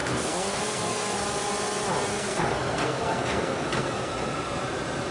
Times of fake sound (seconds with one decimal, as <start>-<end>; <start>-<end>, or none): 0.0-1.2; 2.1-4.1